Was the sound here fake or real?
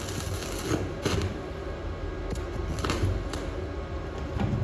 real